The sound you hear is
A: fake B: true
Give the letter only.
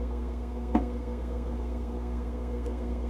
A